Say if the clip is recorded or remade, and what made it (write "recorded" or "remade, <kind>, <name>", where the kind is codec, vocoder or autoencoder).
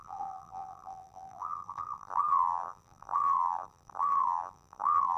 remade, vocoder, BigVGAN v2